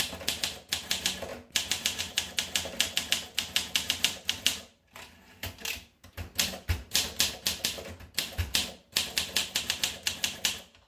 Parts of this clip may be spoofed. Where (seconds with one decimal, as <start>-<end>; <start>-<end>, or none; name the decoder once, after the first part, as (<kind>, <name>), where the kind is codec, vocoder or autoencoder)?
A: none